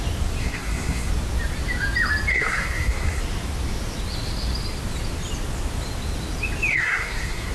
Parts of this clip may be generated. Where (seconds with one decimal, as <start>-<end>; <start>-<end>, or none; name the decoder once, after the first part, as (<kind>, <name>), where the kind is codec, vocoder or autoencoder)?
0.4-1.1 (codec, SNAC); 2.3-3.2; 6.7-7.5